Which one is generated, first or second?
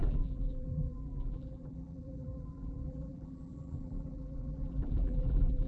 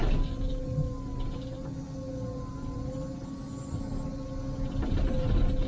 first